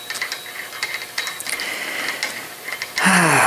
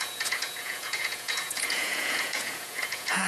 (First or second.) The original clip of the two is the first